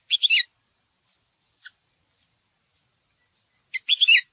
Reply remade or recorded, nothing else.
recorded